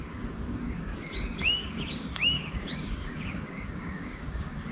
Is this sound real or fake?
fake